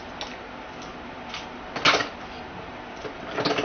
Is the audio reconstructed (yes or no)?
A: no